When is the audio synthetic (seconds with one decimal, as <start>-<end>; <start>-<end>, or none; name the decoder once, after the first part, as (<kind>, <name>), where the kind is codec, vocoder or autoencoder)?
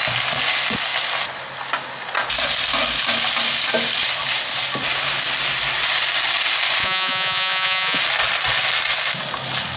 6.8-8.0 (vocoder, Vocos)